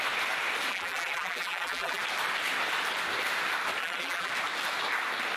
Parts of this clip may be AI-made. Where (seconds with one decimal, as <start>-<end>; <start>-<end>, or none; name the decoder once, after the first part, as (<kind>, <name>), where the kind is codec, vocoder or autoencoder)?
0.7-2.0 (vocoder, BigVGAN v2); 3.8-4.3